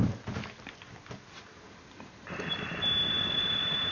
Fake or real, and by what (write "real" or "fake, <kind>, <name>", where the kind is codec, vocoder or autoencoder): real